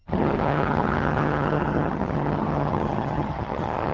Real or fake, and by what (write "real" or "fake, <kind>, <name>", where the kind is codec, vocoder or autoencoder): fake, vocoder, HiFi-GAN